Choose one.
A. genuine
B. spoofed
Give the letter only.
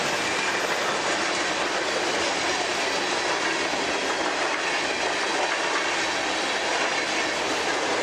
A